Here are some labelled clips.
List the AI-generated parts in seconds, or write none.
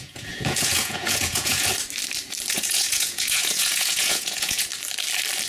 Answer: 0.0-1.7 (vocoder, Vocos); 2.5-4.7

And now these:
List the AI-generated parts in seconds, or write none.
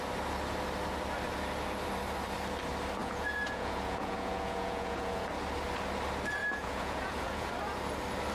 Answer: 3.0-5.2 (vocoder, Vocos); 6.4-7.5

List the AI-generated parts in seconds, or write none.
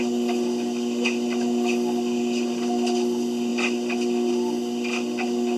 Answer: none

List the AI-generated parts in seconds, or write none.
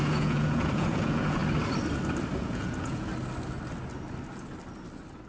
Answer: 0.0-1.4 (vocoder, Vocos); 2.4-3.1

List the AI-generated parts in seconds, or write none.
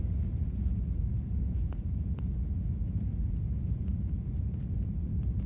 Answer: 1.0-4.3 (vocoder, Vocos)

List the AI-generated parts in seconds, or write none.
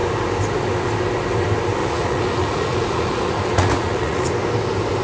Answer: 1.8-4.3 (vocoder, Vocos)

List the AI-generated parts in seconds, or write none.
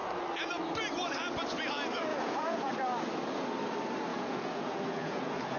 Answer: 2.1-2.7 (vocoder, Vocos); 4.1-5.6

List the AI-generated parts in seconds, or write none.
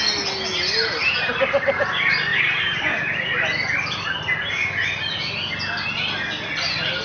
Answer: none